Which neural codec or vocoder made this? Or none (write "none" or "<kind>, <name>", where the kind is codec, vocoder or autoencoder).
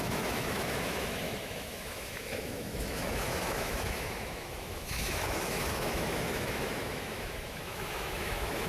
autoencoder, DAC-VAE